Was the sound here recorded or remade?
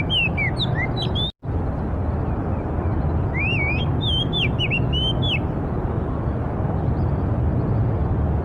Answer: recorded